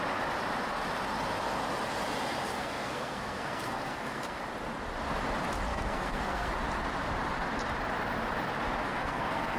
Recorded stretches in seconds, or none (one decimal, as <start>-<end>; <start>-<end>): 0.0-2.5; 4.4-5.7; 6.5-8.9